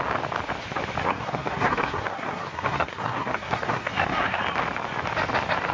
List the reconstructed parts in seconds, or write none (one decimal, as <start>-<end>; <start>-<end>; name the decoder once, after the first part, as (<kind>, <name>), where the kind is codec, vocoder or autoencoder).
1.0-4.4 (codec, SNAC)